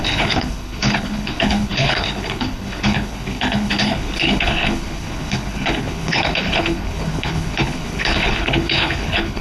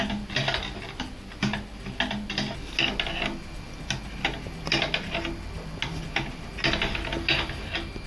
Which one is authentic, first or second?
second